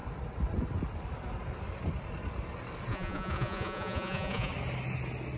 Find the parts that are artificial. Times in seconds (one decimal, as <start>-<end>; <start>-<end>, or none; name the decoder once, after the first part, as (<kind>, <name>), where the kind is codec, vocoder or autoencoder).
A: 2.9-4.5 (vocoder, Vocos)